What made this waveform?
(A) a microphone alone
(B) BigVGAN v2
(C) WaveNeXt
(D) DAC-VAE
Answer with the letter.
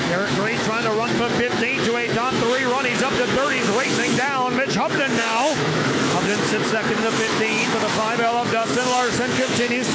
D